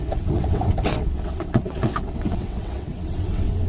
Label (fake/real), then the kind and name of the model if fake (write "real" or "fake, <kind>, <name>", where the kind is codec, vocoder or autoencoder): fake, vocoder, WaveNeXt